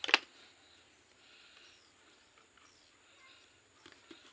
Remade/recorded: recorded